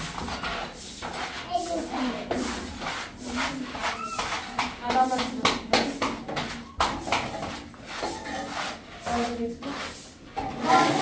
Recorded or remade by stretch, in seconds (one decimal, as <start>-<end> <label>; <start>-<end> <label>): 0.0-11.0 recorded